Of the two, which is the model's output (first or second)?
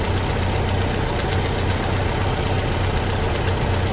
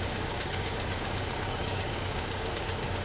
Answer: second